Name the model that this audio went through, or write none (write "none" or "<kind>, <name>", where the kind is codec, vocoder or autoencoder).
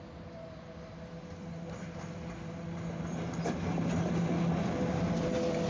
none